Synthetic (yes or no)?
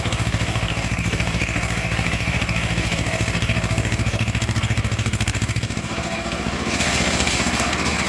yes